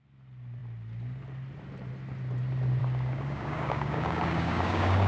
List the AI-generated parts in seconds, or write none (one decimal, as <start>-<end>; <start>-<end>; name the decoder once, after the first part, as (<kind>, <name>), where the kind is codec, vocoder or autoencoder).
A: 2.8-5.1 (codec, DAC)